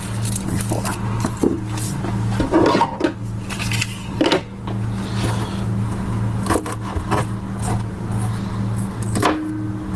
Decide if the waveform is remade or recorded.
recorded